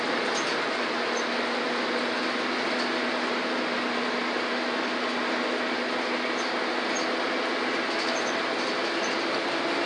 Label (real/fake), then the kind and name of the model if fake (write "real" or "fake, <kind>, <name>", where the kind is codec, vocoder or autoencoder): real